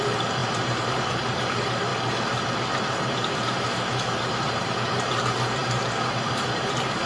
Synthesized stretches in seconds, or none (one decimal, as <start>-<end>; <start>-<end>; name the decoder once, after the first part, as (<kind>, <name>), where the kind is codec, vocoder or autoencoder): 0.0-1.9 (vocoder, BigVGAN v2); 2.8-7.1